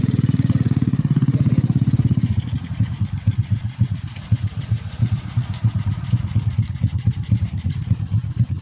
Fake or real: fake